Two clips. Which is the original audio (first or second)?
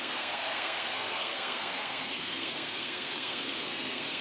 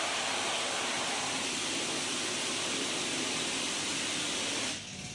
second